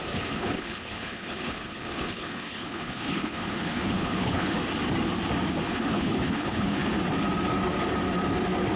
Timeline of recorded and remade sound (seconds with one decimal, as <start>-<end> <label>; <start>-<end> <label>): 0.0-4.6 remade; 4.6-5.6 recorded; 5.6-6.8 remade; 6.8-8.8 recorded